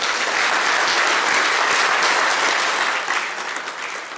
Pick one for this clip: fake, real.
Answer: real